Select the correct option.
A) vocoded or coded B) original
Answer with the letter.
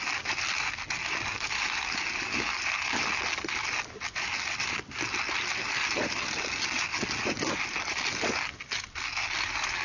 B